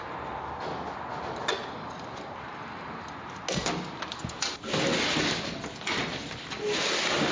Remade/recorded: recorded